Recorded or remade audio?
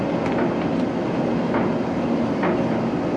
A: recorded